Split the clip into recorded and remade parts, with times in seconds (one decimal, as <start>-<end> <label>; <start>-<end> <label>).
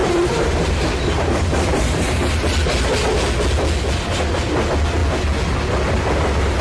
0.0-2.3 remade; 2.3-6.6 recorded